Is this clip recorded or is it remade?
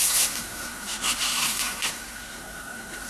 remade